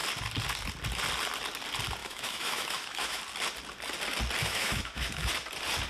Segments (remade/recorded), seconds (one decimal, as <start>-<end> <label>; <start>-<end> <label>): 0.0-2.0 recorded; 2.0-3.2 remade; 3.2-4.4 recorded; 4.4-5.3 remade; 5.3-5.9 recorded